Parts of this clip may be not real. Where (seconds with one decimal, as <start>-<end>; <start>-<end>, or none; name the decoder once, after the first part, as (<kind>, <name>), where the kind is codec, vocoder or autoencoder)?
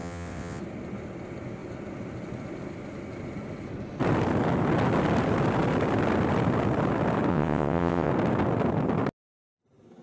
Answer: 0.0-0.6 (vocoder, WaveNeXt); 7.3-8.1